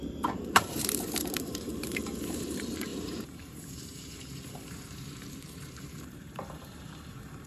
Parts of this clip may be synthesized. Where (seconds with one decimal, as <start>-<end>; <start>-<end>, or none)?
0.0-7.5